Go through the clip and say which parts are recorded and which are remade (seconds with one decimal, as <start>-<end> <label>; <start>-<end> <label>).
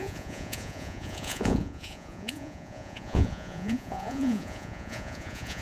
0.0-5.6 remade